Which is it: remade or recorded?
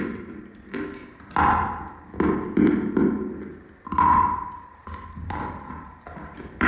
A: recorded